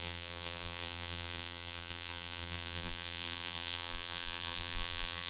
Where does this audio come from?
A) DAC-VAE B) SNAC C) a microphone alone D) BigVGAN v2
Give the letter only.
D